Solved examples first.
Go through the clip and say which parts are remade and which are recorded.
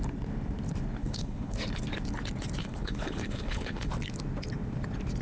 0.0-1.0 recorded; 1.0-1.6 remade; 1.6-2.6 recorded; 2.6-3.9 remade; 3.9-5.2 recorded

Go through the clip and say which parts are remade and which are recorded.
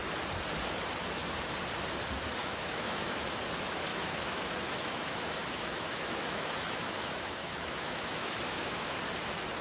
0.0-2.4 recorded; 2.4-3.4 remade; 3.4-3.9 recorded; 3.9-9.0 remade; 9.0-9.6 recorded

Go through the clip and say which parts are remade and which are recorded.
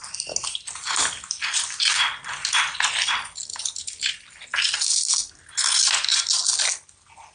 0.0-7.3 recorded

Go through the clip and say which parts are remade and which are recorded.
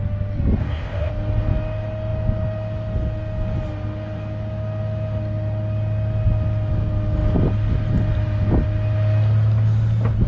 0.0-0.6 recorded; 0.6-1.1 remade; 1.1-10.3 recorded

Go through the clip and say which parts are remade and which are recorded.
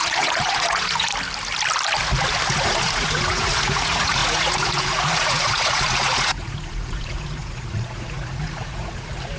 0.0-1.1 remade; 1.1-2.5 recorded; 2.5-9.4 remade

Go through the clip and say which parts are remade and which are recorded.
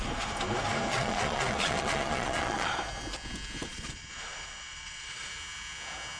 0.0-0.9 recorded; 0.9-2.7 remade; 2.7-3.7 recorded; 3.7-5.3 remade; 5.3-6.2 recorded